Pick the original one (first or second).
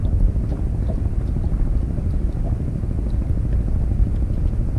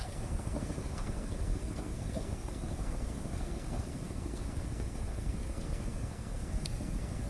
first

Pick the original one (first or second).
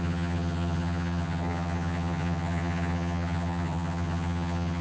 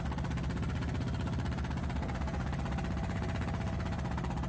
second